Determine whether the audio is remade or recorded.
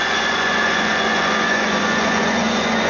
remade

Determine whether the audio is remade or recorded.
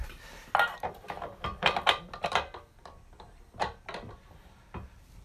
recorded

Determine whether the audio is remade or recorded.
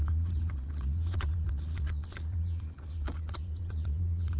remade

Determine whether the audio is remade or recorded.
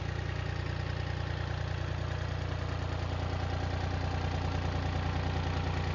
recorded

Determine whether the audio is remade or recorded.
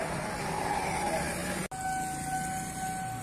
recorded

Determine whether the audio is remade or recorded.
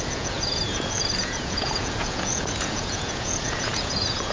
remade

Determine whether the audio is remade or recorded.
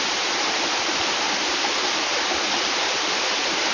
recorded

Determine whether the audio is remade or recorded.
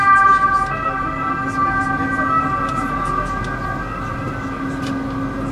recorded